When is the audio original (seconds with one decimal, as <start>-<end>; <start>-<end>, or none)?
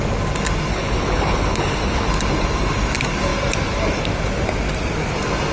0.0-0.7; 2.1-5.5